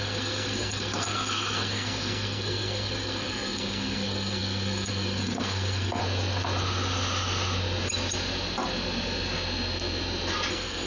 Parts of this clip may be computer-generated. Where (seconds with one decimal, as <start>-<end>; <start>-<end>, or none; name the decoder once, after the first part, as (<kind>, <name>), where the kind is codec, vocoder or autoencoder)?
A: 0.0-6.0 (codec, SNAC); 10.5-10.9